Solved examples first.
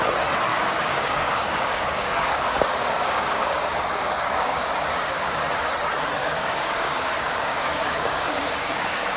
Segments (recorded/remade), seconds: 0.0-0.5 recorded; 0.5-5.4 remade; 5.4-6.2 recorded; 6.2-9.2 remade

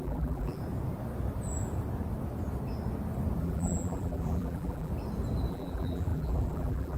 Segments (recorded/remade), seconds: 0.0-0.6 remade; 0.6-3.4 recorded; 3.4-4.9 remade; 4.9-5.5 recorded; 5.5-7.0 remade

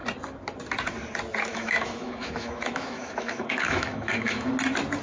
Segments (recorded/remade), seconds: 0.0-1.5 recorded; 1.5-4.5 remade; 4.5-5.0 recorded

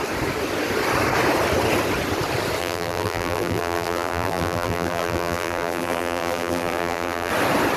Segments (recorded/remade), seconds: 0.0-2.6 recorded; 2.6-7.3 remade; 7.3-7.8 recorded

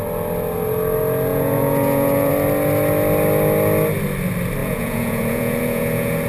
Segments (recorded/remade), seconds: 0.0-1.3 recorded; 1.3-2.3 remade; 2.3-4.6 recorded; 4.6-6.3 remade

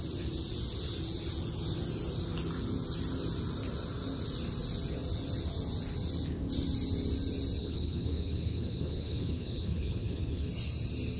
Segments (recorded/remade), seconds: 0.0-7.6 recorded; 7.6-10.5 remade; 10.5-11.2 recorded

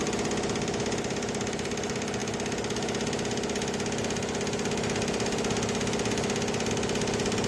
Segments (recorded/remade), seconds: 0.0-2.2 remade; 2.2-6.7 recorded; 6.7-7.5 remade